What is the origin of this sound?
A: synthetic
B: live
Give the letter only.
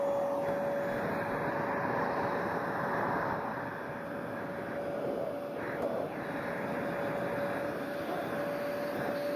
B